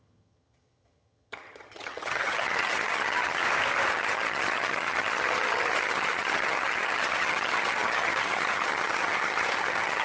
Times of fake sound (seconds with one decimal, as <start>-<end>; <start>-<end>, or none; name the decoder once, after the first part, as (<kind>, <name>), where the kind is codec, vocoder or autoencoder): 0.0-3.4 (vocoder, HiFi-GAN); 3.9-10.0